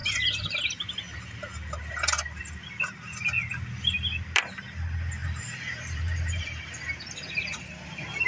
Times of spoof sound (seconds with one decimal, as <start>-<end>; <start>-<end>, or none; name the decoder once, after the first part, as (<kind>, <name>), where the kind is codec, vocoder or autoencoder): 0.0-0.6 (vocoder, BigVGAN v2); 5.2-7.1